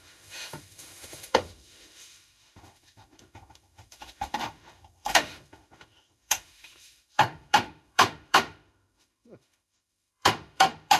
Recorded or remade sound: remade